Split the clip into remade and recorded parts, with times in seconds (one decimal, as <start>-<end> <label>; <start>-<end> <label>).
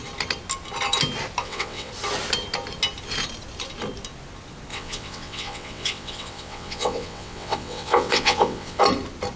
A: 0.0-1.4 recorded; 1.4-1.9 remade; 1.9-4.7 recorded; 4.7-8.8 remade; 8.8-9.4 recorded